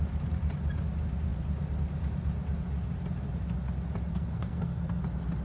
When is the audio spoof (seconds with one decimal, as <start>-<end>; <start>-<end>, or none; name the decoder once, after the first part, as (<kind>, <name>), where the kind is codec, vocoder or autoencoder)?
4.1-5.0 (codec, SNAC)